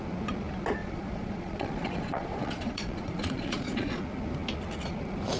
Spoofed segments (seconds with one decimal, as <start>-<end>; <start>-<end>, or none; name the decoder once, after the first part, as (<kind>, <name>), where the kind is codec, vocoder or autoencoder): 0.8-4.0 (vocoder, Vocos)

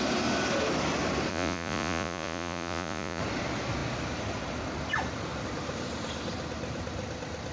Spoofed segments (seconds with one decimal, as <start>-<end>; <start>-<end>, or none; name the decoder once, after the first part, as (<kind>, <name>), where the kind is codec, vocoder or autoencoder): 1.3-3.2 (vocoder, Vocos)

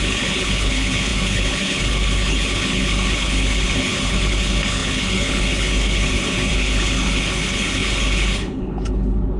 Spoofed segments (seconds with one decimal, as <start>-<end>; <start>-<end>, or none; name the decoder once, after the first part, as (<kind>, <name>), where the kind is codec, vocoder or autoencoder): 0.0-9.4 (codec, HILCodec)

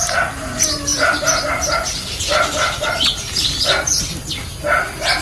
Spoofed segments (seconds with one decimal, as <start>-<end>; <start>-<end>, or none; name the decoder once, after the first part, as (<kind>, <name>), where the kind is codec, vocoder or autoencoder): 0.0-5.2 (vocoder, BigVGAN v2)

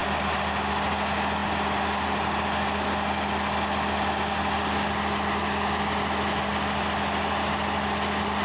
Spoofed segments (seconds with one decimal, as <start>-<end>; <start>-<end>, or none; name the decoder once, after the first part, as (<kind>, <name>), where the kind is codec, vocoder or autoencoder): none